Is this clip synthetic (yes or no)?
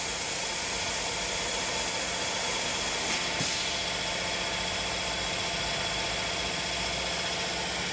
no